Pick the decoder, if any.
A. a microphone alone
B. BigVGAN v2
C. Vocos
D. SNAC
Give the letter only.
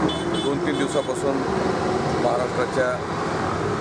A